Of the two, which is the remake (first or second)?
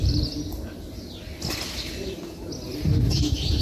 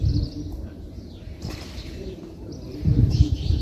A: second